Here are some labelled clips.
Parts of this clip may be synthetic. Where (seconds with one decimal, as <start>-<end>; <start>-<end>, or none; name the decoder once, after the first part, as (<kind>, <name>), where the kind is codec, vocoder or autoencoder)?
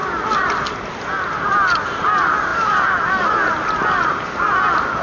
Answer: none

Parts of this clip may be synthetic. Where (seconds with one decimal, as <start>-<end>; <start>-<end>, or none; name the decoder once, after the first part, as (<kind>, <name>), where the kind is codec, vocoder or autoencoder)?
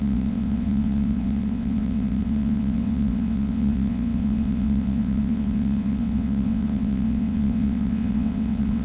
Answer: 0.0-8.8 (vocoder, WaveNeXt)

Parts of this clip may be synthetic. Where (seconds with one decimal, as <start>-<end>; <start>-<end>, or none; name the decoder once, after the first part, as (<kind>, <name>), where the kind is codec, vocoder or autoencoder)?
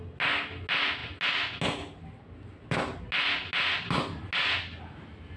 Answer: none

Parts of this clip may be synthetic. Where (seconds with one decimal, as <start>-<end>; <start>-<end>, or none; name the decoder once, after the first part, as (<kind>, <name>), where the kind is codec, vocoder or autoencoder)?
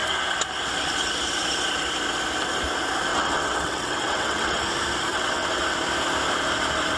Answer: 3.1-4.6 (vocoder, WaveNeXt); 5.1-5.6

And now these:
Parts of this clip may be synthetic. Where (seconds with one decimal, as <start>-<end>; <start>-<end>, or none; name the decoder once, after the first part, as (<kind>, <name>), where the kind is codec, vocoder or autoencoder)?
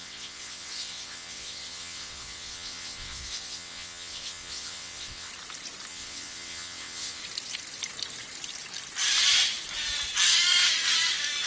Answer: 0.0-5.3 (vocoder, WaveNeXt); 5.9-7.2